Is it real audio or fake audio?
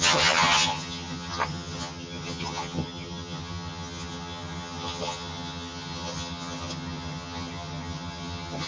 fake